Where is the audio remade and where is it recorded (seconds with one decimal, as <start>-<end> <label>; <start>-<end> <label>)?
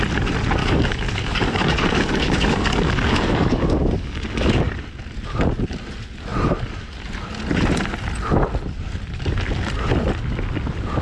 0.0-0.6 recorded; 0.6-4.7 remade; 4.7-11.0 recorded